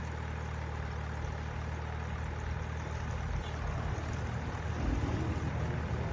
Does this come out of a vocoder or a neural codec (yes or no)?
no